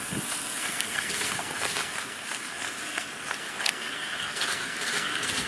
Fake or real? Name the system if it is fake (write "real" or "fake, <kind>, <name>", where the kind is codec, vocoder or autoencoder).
fake, codec, SNAC